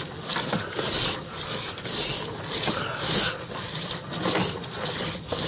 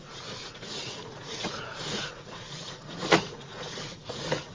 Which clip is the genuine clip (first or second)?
first